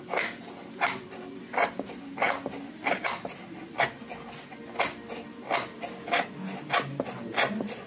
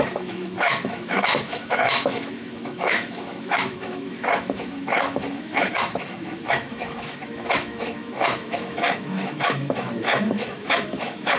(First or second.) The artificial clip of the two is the second